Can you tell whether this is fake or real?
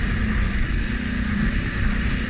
real